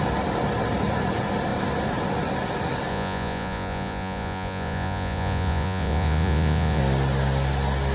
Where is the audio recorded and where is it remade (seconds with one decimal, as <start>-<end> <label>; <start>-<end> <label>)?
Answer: 0.0-2.9 recorded; 2.9-6.8 remade; 6.8-7.9 recorded